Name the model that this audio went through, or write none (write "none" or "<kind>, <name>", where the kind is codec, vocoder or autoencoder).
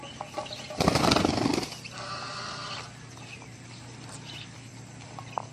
none